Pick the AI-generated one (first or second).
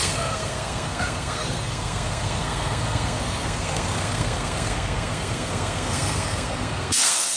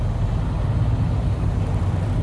first